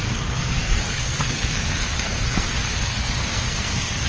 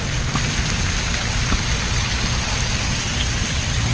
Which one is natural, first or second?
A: second